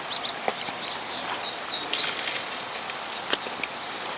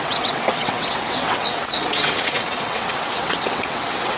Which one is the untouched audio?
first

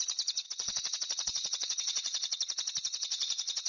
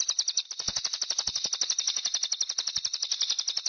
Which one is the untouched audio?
second